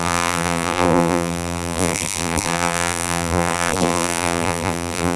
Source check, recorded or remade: remade